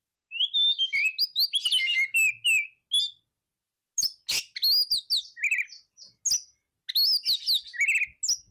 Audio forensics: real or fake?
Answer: real